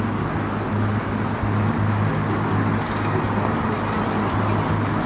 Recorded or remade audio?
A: recorded